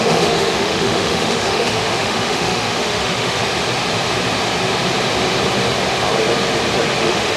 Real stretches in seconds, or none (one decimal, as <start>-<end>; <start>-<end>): 3.4-7.0